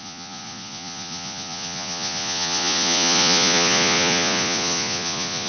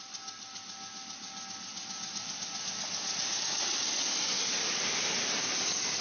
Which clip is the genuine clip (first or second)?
second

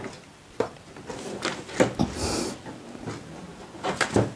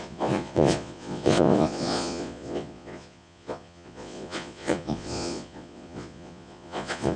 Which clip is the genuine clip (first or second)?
first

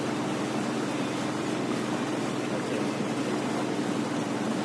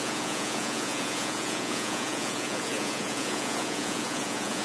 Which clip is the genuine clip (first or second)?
first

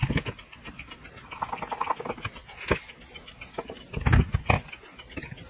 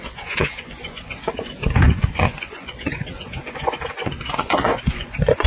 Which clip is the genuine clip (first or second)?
first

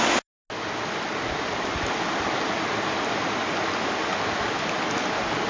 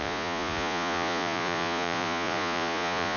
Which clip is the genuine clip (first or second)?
first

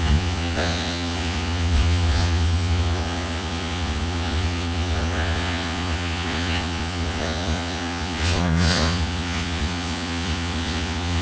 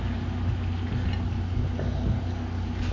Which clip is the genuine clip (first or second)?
second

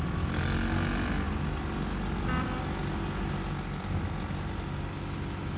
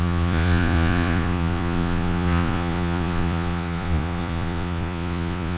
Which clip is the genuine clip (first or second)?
first